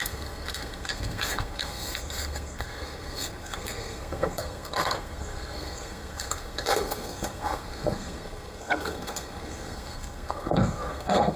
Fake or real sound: fake